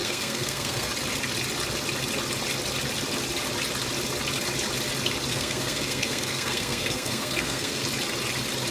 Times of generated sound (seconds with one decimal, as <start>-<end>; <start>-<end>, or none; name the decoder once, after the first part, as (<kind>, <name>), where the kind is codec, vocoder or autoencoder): 0.0-0.9 (codec, SNAC); 5.3-7.8